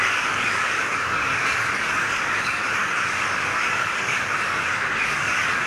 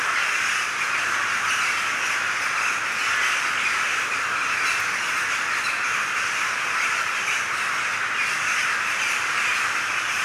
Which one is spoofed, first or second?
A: first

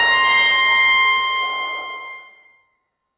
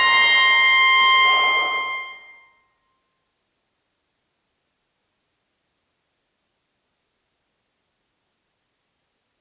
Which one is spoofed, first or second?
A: first